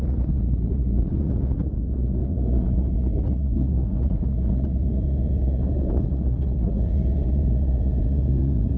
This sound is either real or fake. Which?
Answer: fake